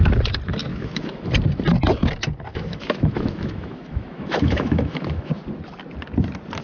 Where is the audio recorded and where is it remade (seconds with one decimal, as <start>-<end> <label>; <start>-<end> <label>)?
0.0-0.7 recorded; 0.7-1.3 remade; 1.3-2.5 recorded; 2.5-5.3 remade; 5.3-6.6 recorded